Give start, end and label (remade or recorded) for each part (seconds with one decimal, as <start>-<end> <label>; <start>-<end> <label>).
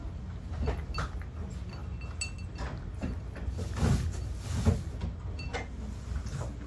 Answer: 0.0-6.7 recorded